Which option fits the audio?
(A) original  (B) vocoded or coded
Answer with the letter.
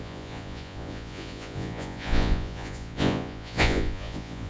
B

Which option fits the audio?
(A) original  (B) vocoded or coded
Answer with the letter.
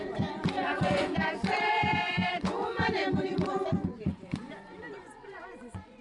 B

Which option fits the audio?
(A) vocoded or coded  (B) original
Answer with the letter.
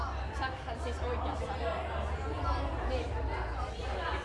B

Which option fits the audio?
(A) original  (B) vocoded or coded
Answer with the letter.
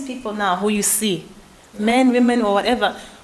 B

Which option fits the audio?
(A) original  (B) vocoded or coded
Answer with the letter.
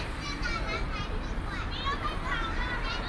A